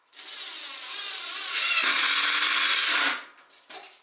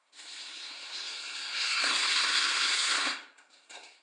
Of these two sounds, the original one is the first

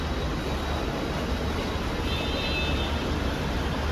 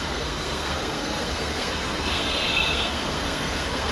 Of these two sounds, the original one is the first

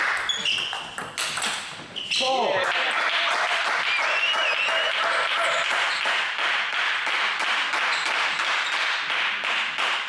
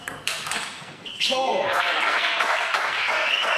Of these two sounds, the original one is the first